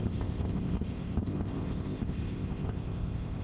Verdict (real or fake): fake